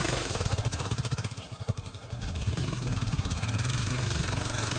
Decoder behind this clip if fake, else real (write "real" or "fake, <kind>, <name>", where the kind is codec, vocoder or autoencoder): fake, codec, SNAC